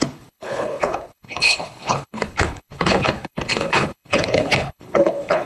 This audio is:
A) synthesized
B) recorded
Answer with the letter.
A